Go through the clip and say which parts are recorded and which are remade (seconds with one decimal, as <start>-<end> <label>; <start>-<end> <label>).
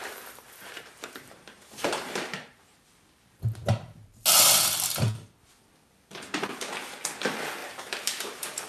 0.0-2.8 remade; 2.8-7.6 recorded; 7.6-8.7 remade